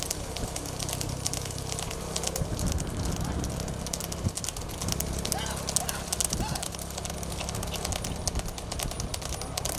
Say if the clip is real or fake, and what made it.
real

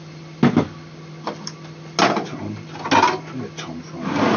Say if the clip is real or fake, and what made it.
real